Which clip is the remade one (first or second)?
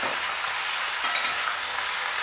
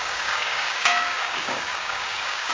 second